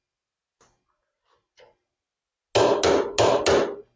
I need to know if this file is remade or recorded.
recorded